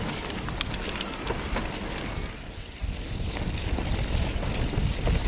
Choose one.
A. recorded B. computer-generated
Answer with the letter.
A